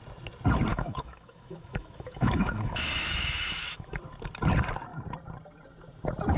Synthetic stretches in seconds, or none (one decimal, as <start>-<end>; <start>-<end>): 0.7-4.0